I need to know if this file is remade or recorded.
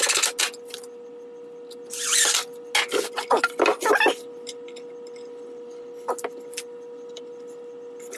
recorded